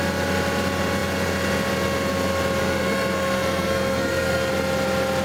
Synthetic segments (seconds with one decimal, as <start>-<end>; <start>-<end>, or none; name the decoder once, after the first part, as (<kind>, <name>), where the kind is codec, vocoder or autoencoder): 2.6-4.5 (codec, SNAC)